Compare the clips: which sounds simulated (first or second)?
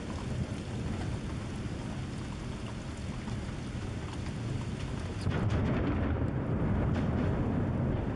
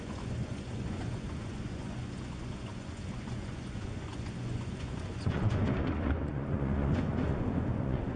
second